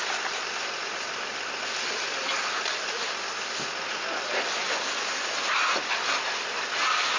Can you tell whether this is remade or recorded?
recorded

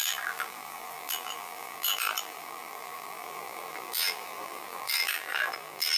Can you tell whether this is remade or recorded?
remade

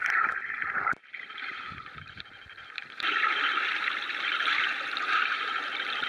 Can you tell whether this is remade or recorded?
recorded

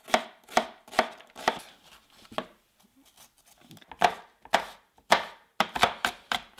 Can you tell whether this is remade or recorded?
recorded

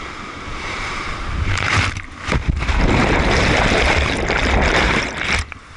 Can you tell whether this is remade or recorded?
remade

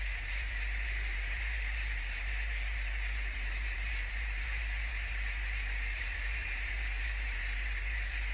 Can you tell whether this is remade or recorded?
remade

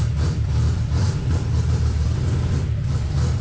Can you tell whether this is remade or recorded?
remade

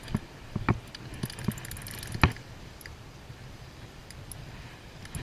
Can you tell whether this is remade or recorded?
recorded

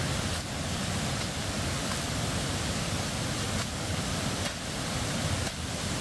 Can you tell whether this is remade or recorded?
remade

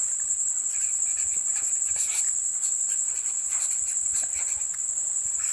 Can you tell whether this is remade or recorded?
remade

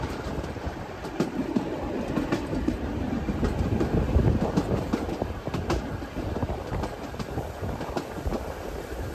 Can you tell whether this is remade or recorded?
recorded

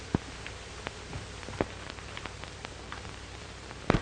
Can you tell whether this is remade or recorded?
remade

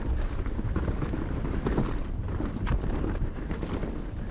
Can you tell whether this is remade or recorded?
remade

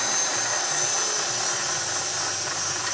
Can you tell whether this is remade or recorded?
recorded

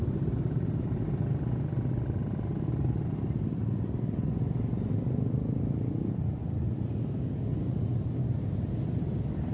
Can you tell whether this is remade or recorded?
remade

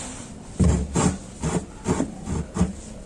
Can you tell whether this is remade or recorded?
recorded